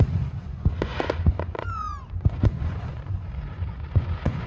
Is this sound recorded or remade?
remade